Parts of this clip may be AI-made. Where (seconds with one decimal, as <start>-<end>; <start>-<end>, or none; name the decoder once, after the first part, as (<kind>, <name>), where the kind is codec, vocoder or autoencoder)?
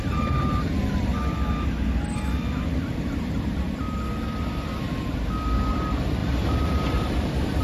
0.0-1.1 (vocoder, BigVGAN v2); 5.7-7.6